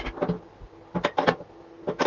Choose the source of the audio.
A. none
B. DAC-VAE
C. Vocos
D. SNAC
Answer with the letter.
A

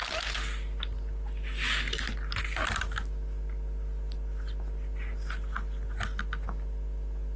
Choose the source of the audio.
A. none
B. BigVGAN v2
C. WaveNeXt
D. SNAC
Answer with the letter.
A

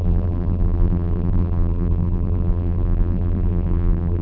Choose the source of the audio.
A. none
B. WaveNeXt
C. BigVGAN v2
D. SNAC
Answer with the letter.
C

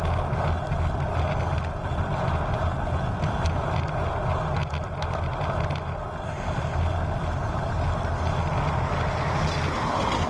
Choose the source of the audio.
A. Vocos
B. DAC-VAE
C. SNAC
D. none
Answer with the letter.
D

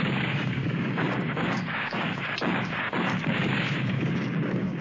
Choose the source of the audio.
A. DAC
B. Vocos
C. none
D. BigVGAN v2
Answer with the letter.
A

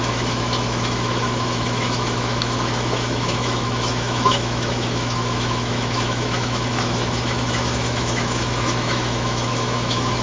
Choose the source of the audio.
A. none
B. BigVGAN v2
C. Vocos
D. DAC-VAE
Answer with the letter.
D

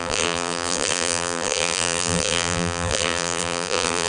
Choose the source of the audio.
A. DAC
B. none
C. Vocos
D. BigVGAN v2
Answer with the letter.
D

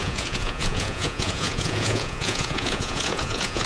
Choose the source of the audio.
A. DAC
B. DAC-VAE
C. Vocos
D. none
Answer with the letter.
C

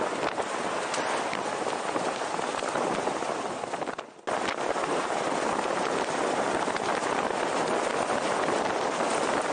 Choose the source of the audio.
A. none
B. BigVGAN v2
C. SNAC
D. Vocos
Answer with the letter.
A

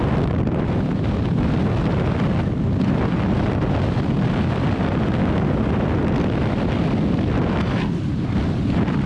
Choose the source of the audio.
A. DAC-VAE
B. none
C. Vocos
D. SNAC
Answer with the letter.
B